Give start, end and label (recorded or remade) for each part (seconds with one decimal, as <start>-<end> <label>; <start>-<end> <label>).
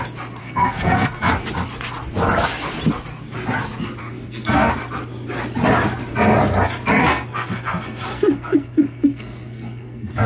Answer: 0.0-0.4 recorded; 0.4-1.3 remade; 1.3-4.0 recorded; 4.0-4.7 remade; 4.7-7.0 recorded; 7.0-10.3 remade